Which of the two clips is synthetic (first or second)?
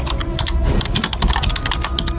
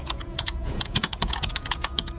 second